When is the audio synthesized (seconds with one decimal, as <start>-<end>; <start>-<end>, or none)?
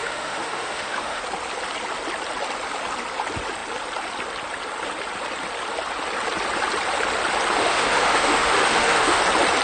0.0-1.2; 7.6-9.2